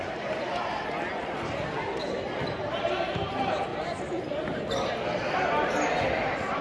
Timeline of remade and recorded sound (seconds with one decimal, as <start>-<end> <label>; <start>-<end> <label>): 0.0-6.6 recorded